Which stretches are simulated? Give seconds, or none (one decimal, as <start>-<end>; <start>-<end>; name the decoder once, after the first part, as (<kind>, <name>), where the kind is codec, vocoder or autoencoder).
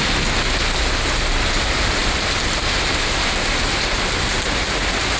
none